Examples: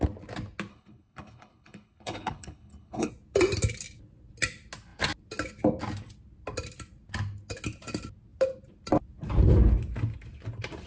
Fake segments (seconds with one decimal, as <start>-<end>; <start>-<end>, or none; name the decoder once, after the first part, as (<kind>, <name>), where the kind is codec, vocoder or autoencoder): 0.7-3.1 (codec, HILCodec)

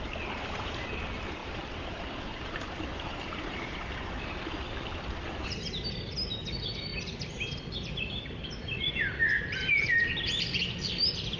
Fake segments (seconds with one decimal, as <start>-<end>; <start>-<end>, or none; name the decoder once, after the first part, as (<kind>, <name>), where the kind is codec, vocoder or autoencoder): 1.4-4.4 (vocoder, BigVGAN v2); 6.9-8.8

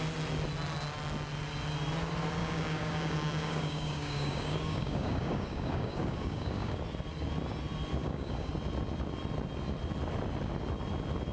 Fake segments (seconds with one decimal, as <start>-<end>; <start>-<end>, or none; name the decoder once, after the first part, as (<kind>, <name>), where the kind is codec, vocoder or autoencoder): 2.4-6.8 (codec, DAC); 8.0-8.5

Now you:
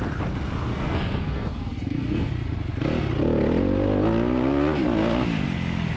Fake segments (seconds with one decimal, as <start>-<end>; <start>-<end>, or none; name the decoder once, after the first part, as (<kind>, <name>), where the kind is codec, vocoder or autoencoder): 0.7-2.3 (codec, SNAC)

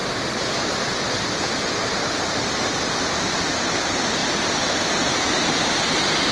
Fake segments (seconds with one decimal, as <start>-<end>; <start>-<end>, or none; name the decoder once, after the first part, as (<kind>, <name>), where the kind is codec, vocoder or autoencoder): 0.0-3.0 (vocoder, BigVGAN v2); 4.2-5.4

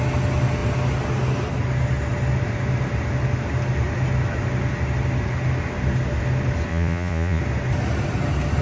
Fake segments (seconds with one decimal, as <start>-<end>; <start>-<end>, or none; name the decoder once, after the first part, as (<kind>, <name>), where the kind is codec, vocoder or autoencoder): 6.7-7.4 (vocoder, Vocos)

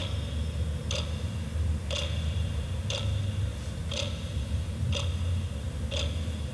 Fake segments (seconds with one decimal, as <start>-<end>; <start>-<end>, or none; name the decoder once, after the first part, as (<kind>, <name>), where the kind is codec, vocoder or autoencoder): none